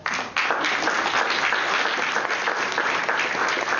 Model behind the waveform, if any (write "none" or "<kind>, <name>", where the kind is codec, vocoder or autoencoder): none